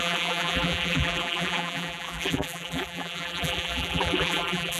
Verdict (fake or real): fake